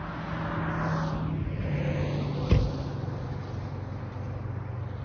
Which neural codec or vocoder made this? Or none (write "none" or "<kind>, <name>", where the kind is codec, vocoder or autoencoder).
none